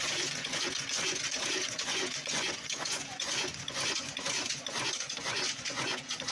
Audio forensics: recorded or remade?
remade